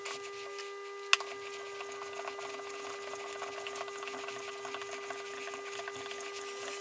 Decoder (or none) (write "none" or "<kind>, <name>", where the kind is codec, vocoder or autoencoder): none